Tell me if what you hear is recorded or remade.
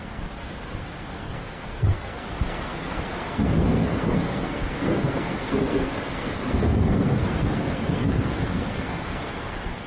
remade